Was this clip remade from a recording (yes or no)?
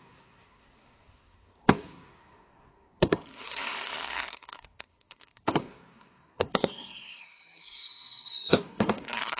yes